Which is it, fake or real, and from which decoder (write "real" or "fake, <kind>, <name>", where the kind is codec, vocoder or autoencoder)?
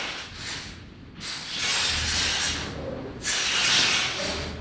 real